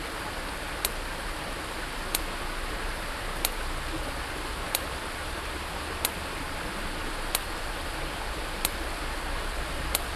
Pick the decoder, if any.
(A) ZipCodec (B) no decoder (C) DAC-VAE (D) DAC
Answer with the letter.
B